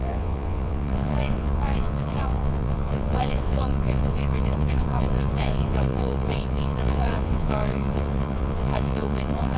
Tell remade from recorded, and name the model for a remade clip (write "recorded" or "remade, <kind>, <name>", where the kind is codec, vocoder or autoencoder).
remade, vocoder, WaveNeXt